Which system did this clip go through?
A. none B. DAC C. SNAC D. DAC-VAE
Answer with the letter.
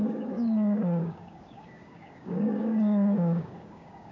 B